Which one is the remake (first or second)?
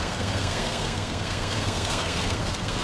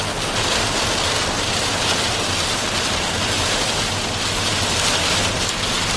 first